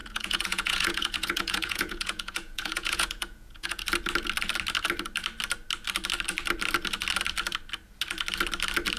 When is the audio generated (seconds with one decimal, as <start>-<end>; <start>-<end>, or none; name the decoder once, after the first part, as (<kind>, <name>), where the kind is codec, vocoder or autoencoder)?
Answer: 0.0-3.8 (vocoder, Vocos)